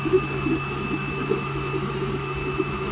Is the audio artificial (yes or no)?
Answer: yes